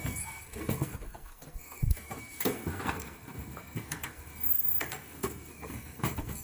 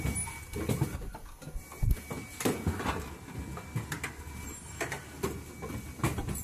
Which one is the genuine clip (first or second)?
second